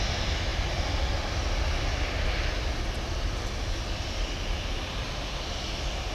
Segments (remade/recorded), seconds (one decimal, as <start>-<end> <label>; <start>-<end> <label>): 0.0-6.1 recorded